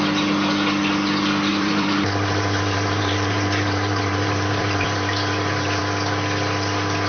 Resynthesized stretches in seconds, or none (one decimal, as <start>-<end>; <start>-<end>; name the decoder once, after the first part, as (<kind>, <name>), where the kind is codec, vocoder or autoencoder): 1.5-5.8 (vocoder, BigVGAN v2)

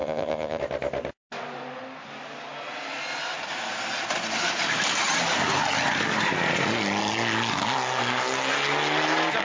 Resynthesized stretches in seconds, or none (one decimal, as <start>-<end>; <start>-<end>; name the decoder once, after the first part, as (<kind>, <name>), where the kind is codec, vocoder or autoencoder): 0.0-0.6 (vocoder, HiFi-GAN)

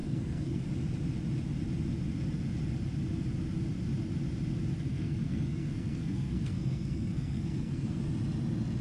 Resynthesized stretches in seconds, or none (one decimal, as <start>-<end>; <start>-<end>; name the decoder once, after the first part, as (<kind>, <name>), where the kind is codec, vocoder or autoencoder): 0.0-0.6 (codec, SNAC); 4.9-8.0

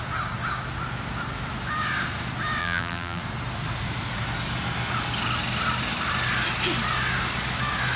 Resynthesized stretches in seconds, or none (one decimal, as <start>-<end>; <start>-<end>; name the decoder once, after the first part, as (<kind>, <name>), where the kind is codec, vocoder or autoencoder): 2.6-3.2 (vocoder, BigVGAN v2)

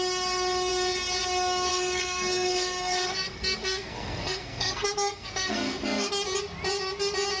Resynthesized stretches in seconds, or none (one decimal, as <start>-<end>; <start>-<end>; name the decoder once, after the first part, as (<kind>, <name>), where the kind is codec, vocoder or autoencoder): 1.7-6.1 (codec, SNAC)